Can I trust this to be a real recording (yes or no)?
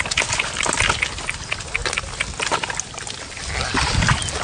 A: yes